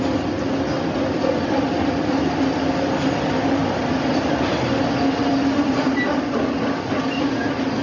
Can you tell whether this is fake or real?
real